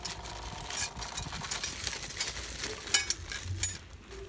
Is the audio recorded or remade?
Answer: recorded